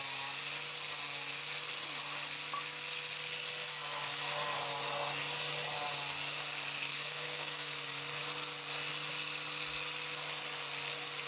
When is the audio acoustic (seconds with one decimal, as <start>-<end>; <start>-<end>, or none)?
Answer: 0.0-6.9; 7.7-11.3